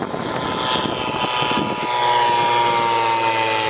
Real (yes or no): yes